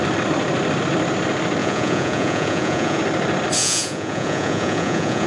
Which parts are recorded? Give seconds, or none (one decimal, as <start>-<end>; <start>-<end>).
0.0-1.6; 3.0-3.6

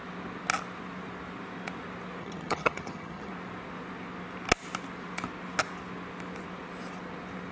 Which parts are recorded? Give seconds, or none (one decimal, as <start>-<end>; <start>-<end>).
0.0-2.2; 3.3-7.5

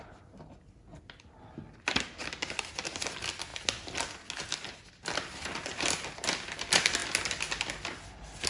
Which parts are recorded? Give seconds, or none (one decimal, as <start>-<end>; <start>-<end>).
0.0-8.5

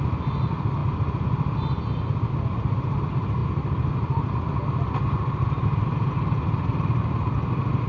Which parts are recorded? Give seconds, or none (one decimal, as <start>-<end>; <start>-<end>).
0.0-7.9

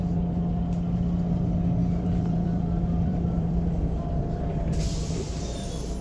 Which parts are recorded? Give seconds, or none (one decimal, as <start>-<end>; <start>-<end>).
0.0-1.8; 5.4-6.0

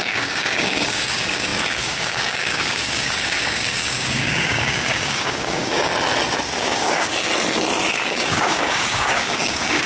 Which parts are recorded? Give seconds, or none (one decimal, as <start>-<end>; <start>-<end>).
5.9-6.6; 7.3-7.9

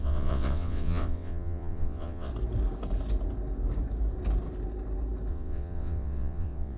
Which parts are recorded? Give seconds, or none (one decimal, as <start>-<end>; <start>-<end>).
2.3-5.3